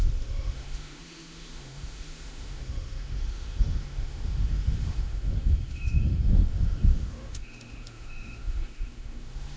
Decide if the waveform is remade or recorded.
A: remade